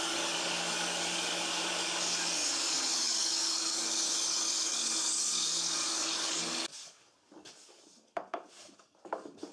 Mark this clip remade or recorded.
remade